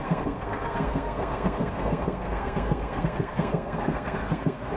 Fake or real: fake